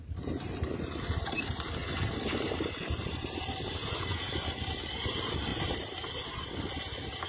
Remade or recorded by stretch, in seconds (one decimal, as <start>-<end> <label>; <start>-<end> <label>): 0.0-1.8 remade; 1.8-2.4 recorded; 2.4-7.3 remade